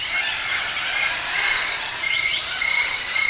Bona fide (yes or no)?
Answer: no